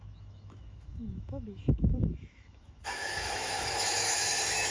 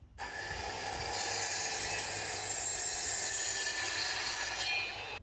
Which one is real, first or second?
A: second